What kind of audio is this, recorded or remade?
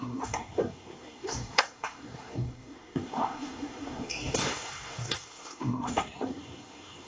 remade